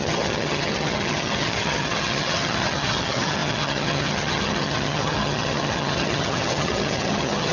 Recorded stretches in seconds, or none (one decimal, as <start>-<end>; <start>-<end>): none